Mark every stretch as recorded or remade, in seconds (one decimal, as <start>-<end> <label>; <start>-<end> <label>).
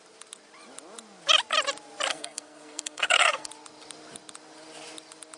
0.0-2.1 recorded; 2.1-3.5 remade; 3.5-5.4 recorded